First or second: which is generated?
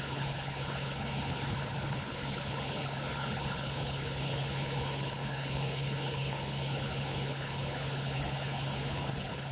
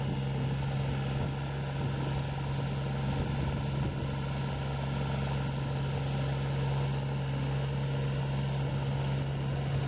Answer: first